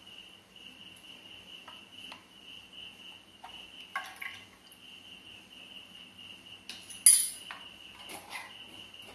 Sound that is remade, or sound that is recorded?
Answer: recorded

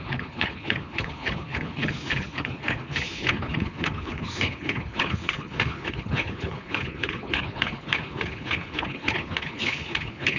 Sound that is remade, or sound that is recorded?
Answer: remade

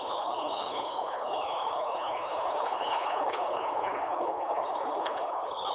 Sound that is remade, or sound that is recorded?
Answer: remade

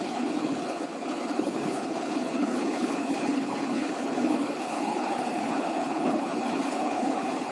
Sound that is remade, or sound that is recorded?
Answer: remade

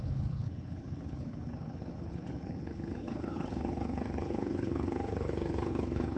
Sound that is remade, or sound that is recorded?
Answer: remade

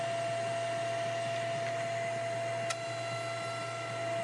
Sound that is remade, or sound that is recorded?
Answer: recorded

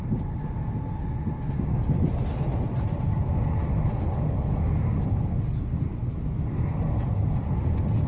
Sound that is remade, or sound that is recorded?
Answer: recorded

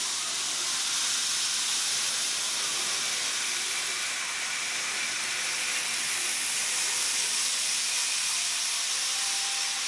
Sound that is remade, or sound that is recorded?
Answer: recorded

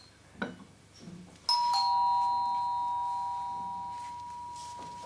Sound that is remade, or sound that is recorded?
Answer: recorded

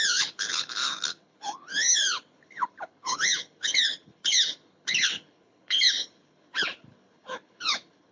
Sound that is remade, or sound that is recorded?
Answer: remade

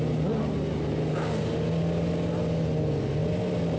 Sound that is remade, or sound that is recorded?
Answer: recorded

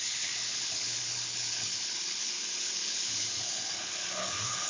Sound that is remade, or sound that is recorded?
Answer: remade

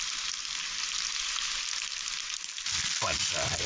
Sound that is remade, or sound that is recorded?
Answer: recorded